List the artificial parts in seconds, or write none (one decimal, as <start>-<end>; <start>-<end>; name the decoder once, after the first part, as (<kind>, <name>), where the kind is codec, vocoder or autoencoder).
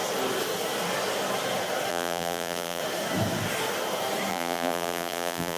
1.9-2.8 (vocoder, BigVGAN v2); 4.3-5.6